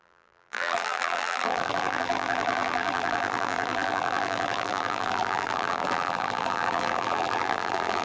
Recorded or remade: remade